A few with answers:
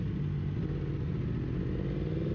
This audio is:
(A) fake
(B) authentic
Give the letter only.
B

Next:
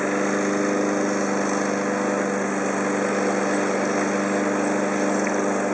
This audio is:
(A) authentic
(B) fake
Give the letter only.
A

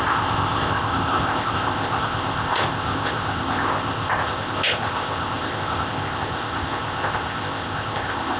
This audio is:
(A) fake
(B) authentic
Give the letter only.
A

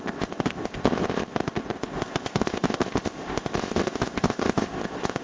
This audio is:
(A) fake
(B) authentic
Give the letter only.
A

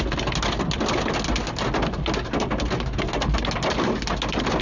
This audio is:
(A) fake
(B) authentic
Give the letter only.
B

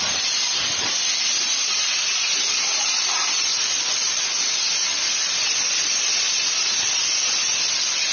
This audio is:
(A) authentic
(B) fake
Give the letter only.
A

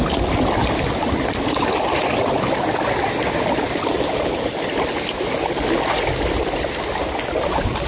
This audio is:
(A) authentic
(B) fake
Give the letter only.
A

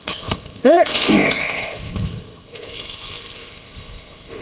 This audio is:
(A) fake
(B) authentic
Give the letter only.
A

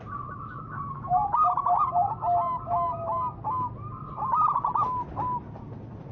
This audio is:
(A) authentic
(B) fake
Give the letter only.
A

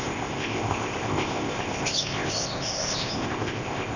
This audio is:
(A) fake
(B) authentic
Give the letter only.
A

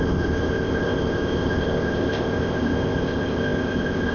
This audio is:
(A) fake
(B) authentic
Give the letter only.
A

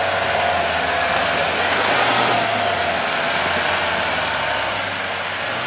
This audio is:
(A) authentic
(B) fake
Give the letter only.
A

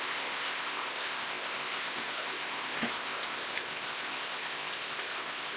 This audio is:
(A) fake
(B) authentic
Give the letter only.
A